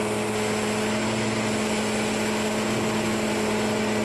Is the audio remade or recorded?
recorded